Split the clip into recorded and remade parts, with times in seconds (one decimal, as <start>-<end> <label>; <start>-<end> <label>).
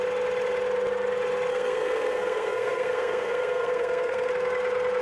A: 0.0-1.5 recorded; 1.5-4.3 remade; 4.3-5.0 recorded